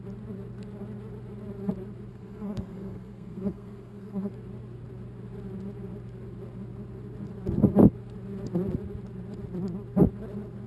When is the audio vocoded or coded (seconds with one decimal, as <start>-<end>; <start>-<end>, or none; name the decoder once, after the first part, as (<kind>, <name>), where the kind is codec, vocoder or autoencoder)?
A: 2.1-4.3 (codec, SNAC)